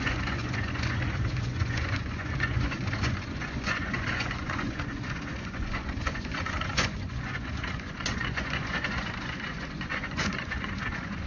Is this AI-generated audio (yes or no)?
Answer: yes